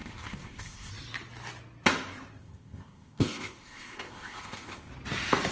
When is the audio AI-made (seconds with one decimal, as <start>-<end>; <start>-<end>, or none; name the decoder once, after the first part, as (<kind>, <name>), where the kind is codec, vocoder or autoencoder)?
0.0-0.9 (codec, ZipCodec); 2.4-4.9